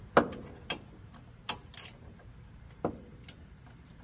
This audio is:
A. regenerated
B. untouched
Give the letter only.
B